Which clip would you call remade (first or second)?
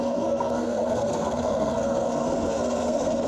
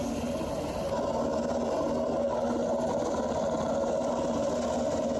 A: first